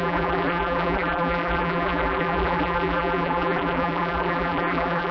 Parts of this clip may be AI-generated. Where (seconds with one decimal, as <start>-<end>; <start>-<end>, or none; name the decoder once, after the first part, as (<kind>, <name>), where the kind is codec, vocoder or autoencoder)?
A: 0.0-5.1 (vocoder, BigVGAN v2)